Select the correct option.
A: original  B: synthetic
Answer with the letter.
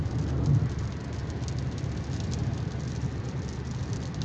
A